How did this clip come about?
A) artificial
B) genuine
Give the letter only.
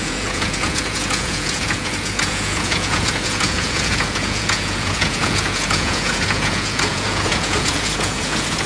A